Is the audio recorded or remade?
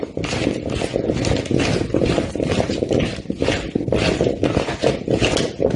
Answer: recorded